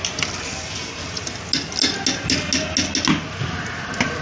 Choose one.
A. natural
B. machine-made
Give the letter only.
A